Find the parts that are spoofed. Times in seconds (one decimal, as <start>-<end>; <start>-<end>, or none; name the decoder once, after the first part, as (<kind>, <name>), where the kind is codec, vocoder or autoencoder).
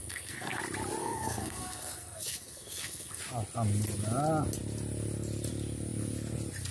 0.0-0.6 (codec, SNAC); 1.0-3.2